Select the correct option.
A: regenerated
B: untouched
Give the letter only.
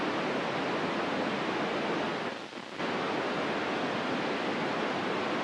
B